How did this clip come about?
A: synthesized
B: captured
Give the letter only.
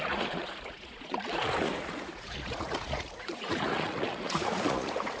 A